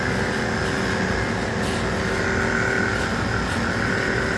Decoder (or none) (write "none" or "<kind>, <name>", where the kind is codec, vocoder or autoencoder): none